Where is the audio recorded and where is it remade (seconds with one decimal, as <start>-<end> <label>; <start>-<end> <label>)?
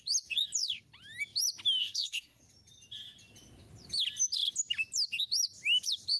0.0-1.8 recorded; 1.8-2.4 remade; 2.4-6.2 recorded